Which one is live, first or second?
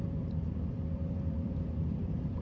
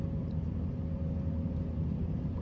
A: second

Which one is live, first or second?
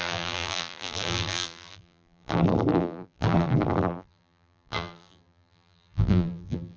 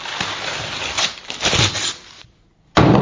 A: second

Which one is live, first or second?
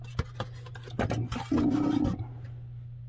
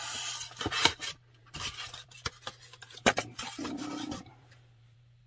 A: first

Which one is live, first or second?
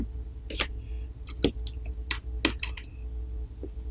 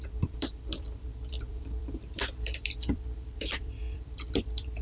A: first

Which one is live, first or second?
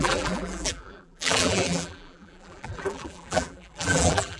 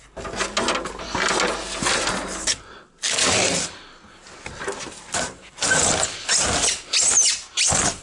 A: second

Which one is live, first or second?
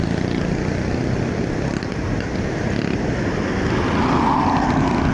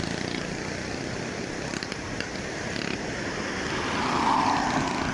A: first